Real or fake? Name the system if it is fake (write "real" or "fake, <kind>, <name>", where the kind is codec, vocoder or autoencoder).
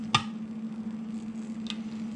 real